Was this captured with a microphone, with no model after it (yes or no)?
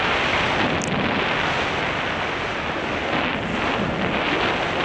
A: yes